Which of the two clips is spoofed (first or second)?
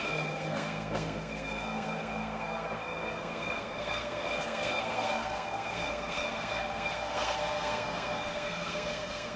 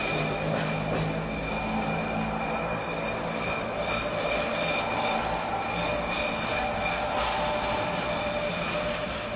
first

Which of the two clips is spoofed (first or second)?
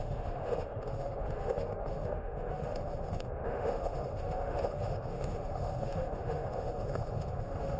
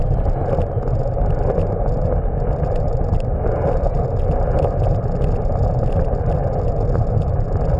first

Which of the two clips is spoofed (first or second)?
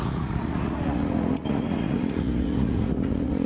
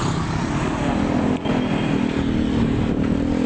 first